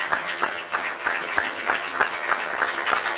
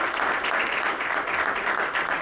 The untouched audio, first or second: second